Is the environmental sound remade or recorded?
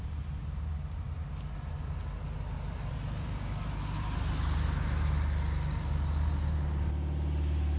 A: recorded